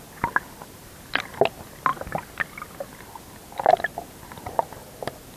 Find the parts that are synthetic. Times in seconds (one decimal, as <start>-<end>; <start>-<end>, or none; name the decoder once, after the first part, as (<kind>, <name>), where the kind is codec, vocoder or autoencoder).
none